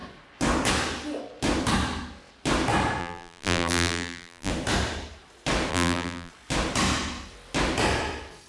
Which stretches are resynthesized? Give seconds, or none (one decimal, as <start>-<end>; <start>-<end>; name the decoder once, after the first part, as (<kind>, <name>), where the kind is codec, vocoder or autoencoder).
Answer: 3.0-4.5 (vocoder, BigVGAN v2); 5.7-6.3